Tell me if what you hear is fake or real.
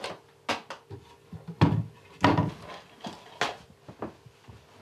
real